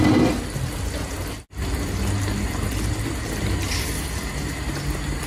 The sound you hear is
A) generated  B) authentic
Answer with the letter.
B